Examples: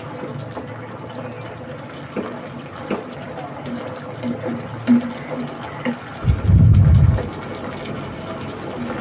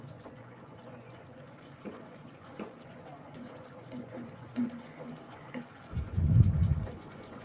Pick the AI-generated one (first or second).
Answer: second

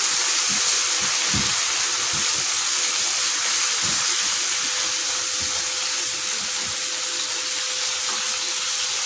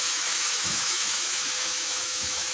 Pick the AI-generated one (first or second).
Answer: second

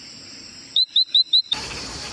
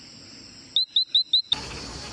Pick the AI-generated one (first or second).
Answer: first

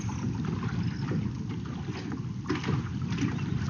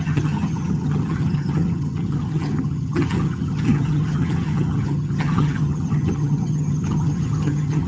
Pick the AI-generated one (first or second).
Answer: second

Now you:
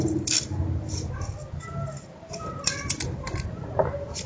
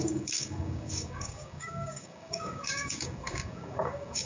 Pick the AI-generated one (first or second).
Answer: second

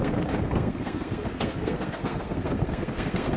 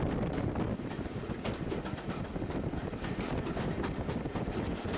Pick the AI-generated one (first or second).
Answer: first